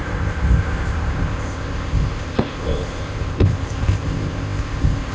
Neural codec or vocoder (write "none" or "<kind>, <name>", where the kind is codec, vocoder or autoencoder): codec, ZipCodec